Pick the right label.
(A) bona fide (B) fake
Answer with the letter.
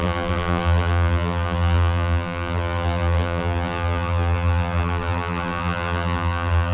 B